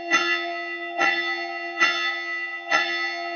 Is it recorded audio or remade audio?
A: remade